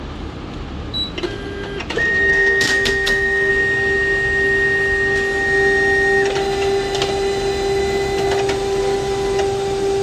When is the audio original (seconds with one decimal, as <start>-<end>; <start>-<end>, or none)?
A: 0.0-2.3; 3.5-10.0